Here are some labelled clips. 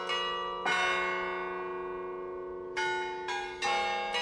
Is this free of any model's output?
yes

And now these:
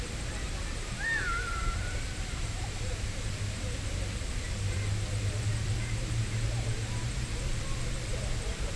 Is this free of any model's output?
no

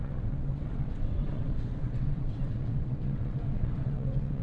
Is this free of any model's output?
no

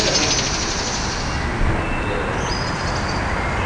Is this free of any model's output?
yes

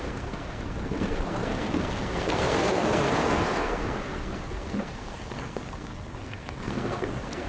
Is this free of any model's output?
no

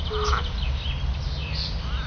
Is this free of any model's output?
yes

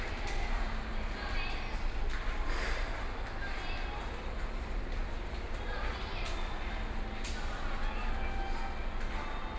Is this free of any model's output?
yes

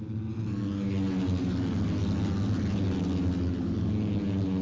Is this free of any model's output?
yes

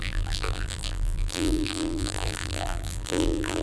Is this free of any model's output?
no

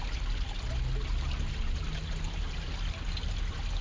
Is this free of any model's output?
yes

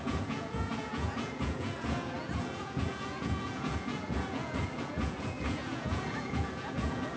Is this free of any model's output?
no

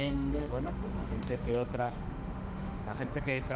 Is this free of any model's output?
no